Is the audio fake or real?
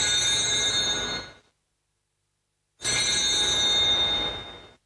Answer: real